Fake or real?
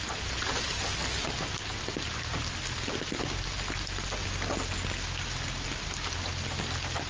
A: real